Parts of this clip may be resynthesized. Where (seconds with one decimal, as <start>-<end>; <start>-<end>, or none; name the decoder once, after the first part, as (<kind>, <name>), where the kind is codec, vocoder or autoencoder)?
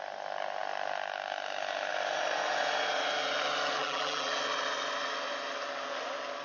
3.8-4.3 (vocoder, BigVGAN v2)